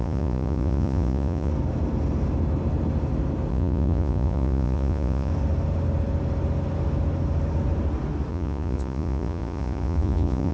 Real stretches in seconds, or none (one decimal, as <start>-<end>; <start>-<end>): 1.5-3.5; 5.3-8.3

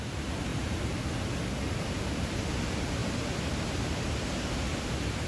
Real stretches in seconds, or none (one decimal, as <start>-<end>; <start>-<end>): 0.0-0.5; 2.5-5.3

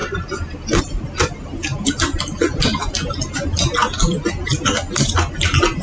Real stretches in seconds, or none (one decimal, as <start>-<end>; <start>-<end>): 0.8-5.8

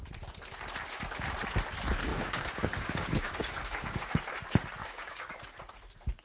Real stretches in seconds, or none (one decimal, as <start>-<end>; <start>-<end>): 0.0-2.1; 4.2-4.8; 5.4-6.2

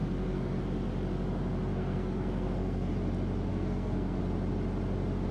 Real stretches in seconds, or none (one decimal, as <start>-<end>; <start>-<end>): 0.6-1.7; 2.9-3.5; 4.2-5.3

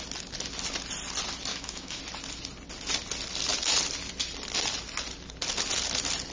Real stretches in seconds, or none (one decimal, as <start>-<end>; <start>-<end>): 0.0-1.5; 2.0-6.3

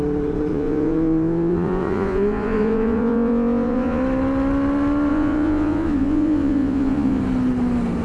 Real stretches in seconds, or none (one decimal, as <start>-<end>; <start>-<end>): 0.0-0.5; 4.0-5.1; 7.2-8.0

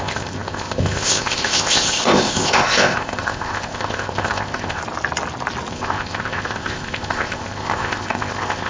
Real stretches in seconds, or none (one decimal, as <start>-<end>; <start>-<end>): 4.8-5.7